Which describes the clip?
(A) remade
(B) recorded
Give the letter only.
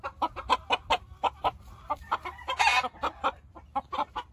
A